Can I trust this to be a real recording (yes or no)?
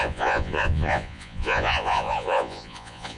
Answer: no